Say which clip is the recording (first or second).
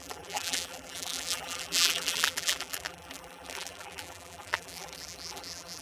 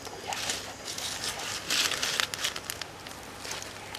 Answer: second